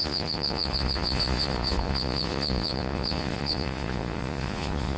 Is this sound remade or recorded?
remade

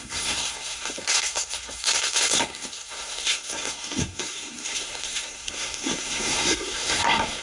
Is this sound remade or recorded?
remade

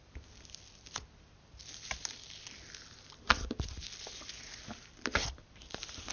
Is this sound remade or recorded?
remade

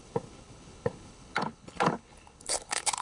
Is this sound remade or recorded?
remade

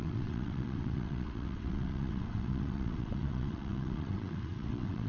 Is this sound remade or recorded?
remade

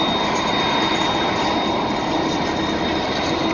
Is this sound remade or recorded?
recorded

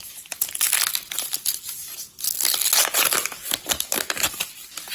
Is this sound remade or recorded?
recorded